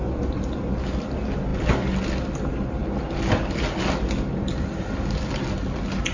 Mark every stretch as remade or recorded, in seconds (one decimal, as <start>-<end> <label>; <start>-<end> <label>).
0.0-6.1 recorded